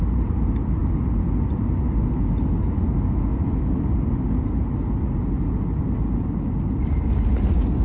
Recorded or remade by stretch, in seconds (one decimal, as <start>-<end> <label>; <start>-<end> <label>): 0.0-7.8 recorded